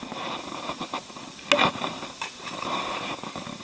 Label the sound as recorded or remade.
recorded